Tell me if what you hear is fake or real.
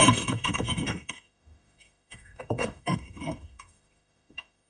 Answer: fake